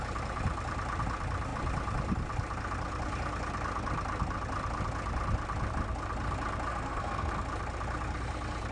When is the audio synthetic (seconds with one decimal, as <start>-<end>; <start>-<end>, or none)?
6.7-7.3